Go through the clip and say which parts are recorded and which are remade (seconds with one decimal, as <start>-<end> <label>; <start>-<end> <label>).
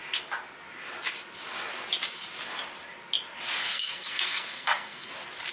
0.0-3.6 recorded; 3.6-5.1 remade; 5.1-5.5 recorded